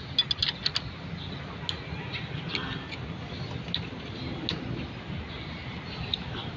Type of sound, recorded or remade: recorded